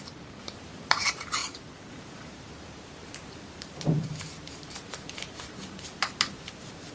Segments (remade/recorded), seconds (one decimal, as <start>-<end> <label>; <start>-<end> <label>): 0.0-1.4 remade; 1.4-1.9 recorded; 1.9-6.9 remade